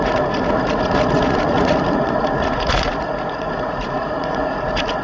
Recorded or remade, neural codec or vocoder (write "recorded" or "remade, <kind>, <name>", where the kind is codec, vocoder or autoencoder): remade, vocoder, Vocos